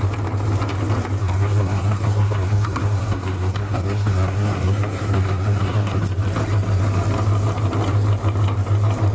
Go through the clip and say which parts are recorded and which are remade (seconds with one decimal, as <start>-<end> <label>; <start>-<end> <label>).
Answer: 0.0-1.2 recorded; 1.2-6.0 remade; 6.0-9.1 recorded